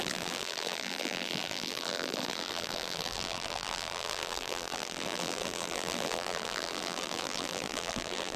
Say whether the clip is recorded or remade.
remade